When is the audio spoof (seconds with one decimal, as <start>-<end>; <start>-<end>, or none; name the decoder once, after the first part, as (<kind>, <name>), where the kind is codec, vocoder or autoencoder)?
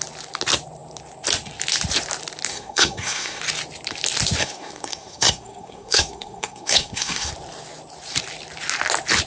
2.5-3.4 (codec, SNAC); 4.4-7.3